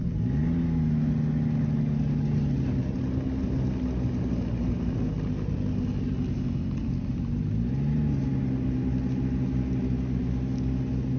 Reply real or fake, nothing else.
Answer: real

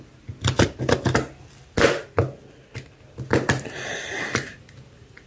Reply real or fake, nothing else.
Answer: real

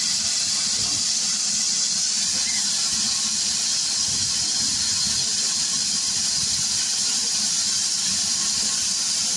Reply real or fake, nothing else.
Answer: real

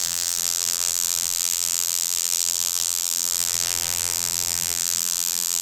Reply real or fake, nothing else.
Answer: fake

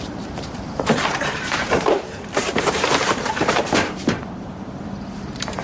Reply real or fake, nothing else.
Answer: fake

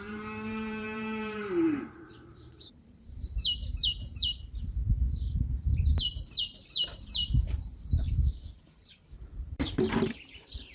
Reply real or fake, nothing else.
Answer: fake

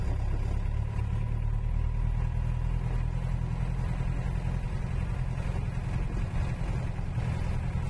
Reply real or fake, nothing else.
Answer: real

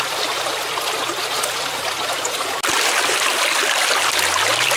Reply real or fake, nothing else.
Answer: real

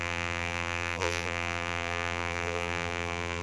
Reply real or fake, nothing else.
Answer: fake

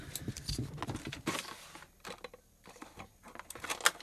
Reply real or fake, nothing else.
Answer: real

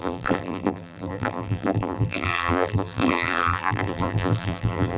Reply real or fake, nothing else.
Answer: fake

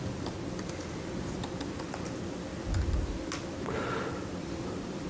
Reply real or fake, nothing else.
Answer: real